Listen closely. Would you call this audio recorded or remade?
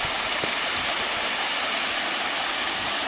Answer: recorded